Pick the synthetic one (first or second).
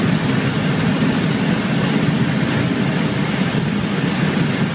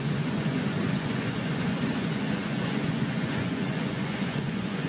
second